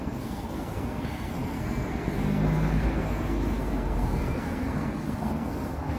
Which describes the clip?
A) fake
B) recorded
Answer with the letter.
A